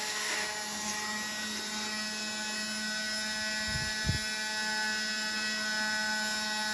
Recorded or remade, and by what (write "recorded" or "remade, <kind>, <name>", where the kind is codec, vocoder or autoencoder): recorded